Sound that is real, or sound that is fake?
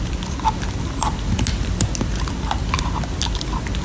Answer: real